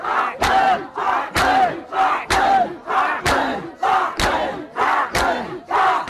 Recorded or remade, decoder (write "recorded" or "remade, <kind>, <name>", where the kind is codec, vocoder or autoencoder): recorded